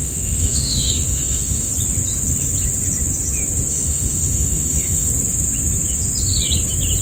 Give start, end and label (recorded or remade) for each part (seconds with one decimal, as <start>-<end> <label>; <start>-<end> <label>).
0.0-1.7 remade; 1.7-3.7 recorded; 3.7-5.1 remade; 5.1-7.0 recorded